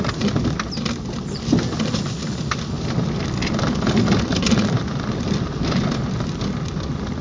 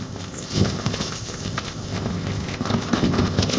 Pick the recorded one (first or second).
first